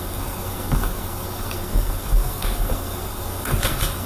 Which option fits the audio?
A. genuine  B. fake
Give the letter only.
B